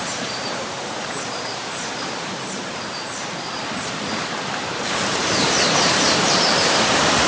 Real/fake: fake